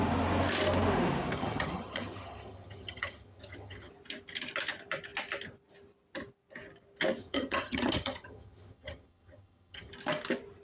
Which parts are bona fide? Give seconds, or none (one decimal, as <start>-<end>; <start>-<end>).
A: 0.0-1.3; 3.9-7.2; 9.9-10.6